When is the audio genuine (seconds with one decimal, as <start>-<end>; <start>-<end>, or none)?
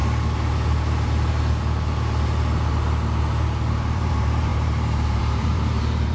0.0-3.7